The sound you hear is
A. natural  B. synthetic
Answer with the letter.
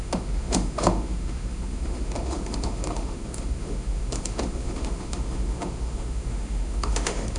B